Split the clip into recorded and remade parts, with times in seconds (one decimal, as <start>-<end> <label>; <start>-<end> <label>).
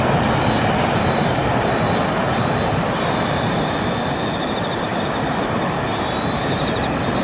0.0-1.4 recorded; 1.4-2.5 remade; 2.5-7.2 recorded